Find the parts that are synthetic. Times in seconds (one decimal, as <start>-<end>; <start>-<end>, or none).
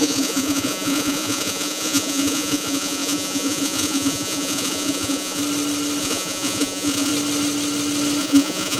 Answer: 0.0-5.4; 6.0-7.1; 8.2-8.8